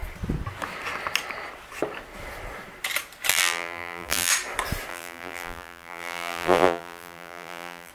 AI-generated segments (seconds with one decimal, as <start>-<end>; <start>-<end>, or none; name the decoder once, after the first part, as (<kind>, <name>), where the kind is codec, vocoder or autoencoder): 3.3-4.3 (vocoder, BigVGAN v2); 4.9-7.9